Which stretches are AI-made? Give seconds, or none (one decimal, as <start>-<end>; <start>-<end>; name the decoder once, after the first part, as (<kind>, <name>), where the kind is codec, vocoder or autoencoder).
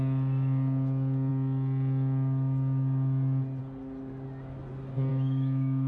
5.1-5.9 (autoencoder, DAC-VAE)